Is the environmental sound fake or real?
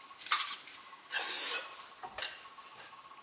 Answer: real